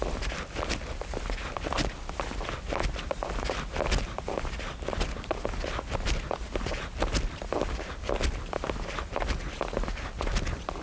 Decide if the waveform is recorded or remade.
recorded